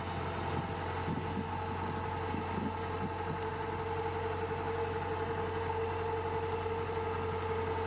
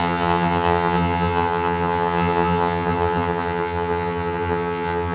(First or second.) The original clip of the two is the first